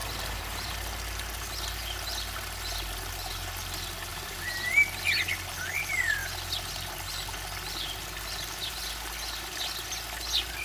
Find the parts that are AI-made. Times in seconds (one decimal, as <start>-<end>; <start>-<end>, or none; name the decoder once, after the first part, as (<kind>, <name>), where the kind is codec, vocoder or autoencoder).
0.0-0.7 (vocoder, BigVGAN v2); 4.1-4.7